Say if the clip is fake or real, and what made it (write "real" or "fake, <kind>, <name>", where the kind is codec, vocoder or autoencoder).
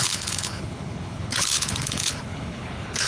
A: fake, codec, HILCodec